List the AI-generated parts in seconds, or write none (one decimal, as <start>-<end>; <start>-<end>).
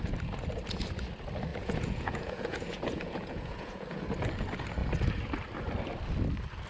1.5-4.0